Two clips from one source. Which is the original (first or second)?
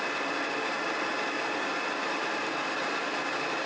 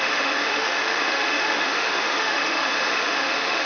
first